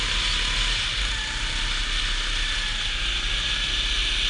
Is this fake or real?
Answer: real